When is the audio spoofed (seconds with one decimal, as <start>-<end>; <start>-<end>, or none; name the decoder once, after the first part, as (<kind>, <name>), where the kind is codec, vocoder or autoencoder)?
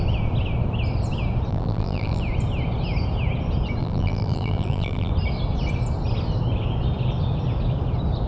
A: 1.5-2.2 (vocoder, BigVGAN v2); 3.8-5.1